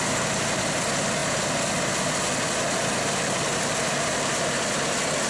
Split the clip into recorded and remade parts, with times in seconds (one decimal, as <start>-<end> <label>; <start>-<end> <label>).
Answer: 0.0-1.2 remade; 1.2-3.6 recorded; 3.6-5.3 remade